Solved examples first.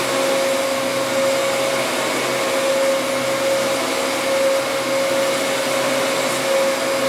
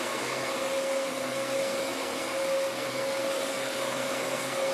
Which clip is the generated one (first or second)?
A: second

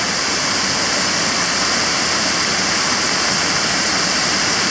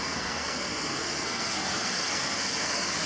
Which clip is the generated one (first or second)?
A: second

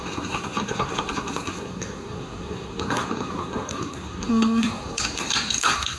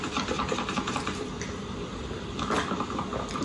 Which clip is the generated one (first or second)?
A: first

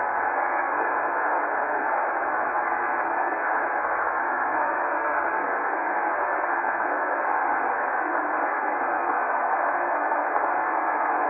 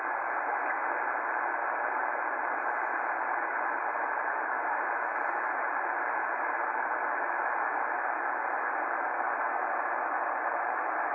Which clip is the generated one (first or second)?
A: first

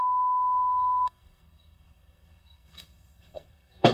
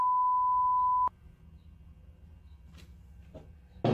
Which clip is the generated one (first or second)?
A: first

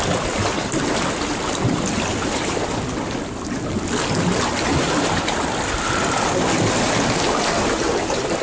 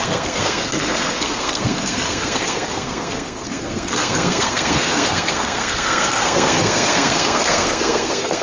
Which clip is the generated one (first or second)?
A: second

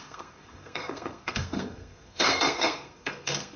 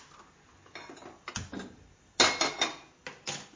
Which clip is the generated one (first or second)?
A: first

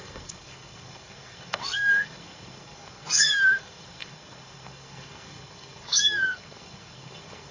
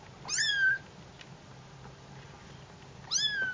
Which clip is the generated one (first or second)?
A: first